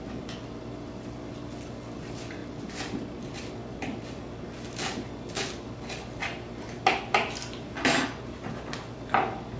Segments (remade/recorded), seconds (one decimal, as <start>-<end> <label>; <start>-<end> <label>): 0.0-9.6 recorded